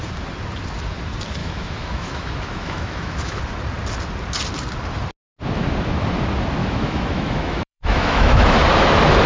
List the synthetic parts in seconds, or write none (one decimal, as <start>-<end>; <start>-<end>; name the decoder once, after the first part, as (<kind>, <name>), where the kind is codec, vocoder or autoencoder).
1.4-3.4 (autoencoder, DAC-VAE); 6.6-8.6